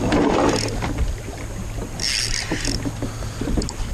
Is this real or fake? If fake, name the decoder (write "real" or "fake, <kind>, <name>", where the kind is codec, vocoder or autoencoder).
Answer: real